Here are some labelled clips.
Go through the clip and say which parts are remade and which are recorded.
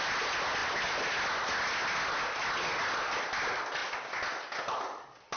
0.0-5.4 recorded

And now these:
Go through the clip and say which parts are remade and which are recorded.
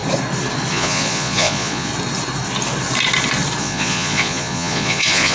0.0-0.7 recorded; 0.7-1.9 remade; 1.9-3.6 recorded; 3.6-5.3 remade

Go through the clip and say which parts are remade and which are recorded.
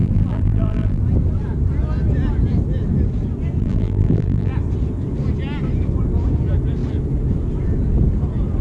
0.0-1.0 remade; 1.0-3.6 recorded; 3.6-4.5 remade; 4.5-8.6 recorded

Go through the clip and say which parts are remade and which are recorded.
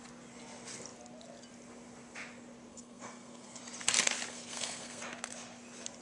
0.0-2.7 recorded; 2.7-3.6 remade; 3.6-4.3 recorded; 4.3-5.0 remade; 5.0-6.0 recorded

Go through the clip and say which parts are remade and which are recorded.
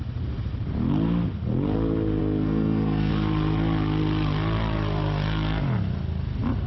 0.0-2.2 recorded; 2.2-3.1 remade; 3.1-6.7 recorded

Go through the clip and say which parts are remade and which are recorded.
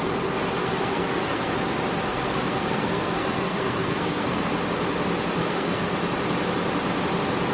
0.0-0.6 recorded; 0.6-1.5 remade; 1.5-2.1 recorded; 2.1-4.5 remade; 4.5-5.4 recorded; 5.4-5.9 remade; 5.9-7.5 recorded